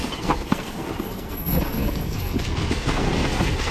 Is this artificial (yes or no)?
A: yes